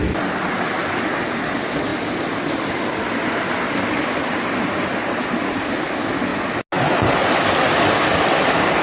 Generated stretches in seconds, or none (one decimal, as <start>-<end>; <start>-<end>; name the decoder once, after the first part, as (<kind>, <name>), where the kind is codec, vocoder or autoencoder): none